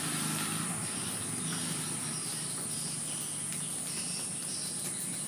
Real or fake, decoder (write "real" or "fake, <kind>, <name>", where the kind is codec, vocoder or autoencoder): real